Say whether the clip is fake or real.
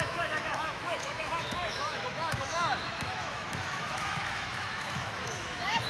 fake